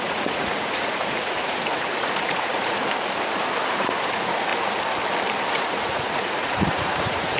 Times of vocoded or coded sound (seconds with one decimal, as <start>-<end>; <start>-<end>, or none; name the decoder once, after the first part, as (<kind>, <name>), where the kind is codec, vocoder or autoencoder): 0.0-2.8 (vocoder, Vocos); 3.7-4.5; 5.5-7.4